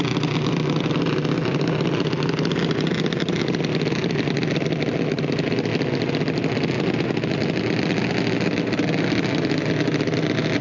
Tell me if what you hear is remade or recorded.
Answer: recorded